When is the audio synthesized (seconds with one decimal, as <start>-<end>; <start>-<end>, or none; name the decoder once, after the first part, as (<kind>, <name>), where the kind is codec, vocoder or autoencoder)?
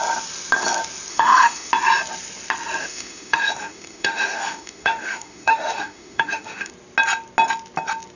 1.1-1.7 (autoencoder, DAC-VAE); 2.8-6.7